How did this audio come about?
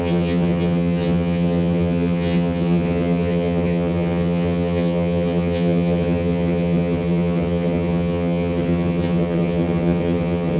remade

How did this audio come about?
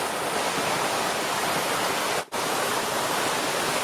recorded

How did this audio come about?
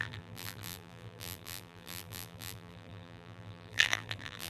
remade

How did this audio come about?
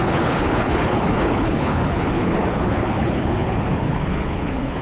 remade